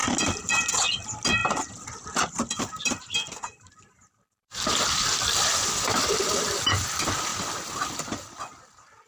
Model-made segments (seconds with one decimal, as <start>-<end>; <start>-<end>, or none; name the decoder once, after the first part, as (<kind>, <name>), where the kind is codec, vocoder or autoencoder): 1.4-6.6 (vocoder, BigVGAN v2); 7.3-8.4